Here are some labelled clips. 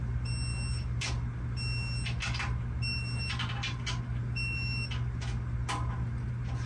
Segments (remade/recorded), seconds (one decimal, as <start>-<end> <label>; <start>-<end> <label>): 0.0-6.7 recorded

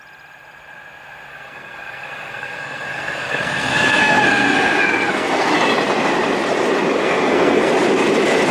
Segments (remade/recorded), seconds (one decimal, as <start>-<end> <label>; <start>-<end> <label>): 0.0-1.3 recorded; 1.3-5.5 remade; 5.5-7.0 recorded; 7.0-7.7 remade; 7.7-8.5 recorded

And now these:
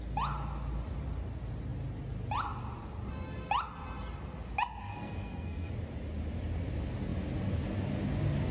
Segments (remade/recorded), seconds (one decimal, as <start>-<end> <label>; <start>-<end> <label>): 0.0-4.8 recorded; 4.8-5.7 remade; 5.7-8.5 recorded

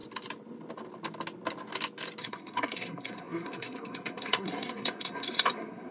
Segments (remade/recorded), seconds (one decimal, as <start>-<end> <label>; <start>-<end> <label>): 0.0-2.2 recorded; 2.2-5.9 remade

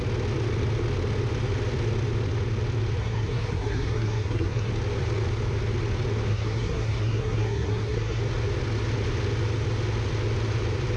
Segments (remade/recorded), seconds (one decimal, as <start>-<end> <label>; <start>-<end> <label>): 0.0-3.0 recorded; 3.0-4.7 remade; 4.7-6.3 recorded; 6.3-8.2 remade; 8.2-11.0 recorded

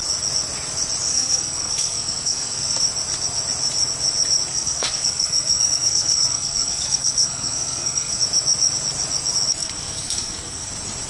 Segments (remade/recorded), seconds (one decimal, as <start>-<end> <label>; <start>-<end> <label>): 0.0-1.1 recorded; 1.1-2.8 remade; 2.8-4.5 recorded; 4.5-8.2 remade; 8.2-9.6 recorded; 9.6-10.7 remade; 10.7-11.1 recorded

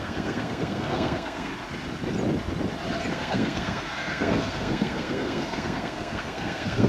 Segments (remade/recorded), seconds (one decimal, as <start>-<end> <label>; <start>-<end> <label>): 0.0-1.5 remade; 1.5-3.1 recorded; 3.1-6.9 remade